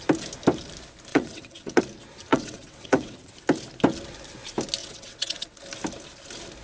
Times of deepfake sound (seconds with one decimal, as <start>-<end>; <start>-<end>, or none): 1.1-1.8; 2.3-3.3; 4.8-5.6

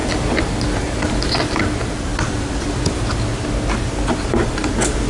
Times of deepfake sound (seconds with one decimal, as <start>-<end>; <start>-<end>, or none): 2.1-2.7

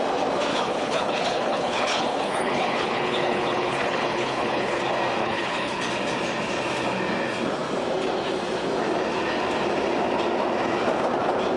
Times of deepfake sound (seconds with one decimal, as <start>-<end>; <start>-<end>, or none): 0.5-4.8; 5.2-5.8

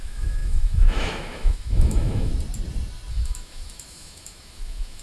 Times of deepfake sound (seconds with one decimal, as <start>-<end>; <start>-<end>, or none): 0.0-2.3; 3.1-5.0